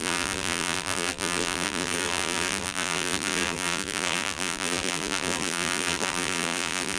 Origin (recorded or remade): remade